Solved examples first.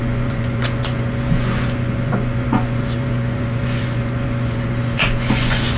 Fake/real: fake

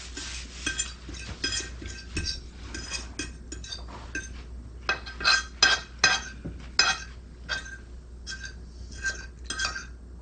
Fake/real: real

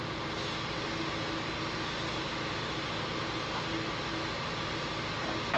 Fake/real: real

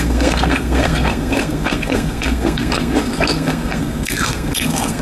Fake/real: fake